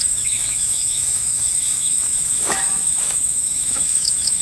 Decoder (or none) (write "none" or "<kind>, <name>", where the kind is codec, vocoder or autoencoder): autoencoder, DAC-VAE